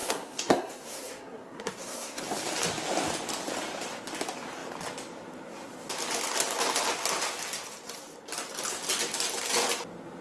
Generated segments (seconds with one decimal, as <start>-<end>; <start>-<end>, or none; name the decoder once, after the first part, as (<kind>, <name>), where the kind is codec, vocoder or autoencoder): 0.0-2.2 (codec, SNAC)